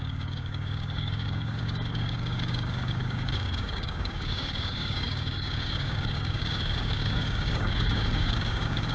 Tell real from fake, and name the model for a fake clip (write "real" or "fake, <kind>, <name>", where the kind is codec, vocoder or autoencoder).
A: fake, codec, DAC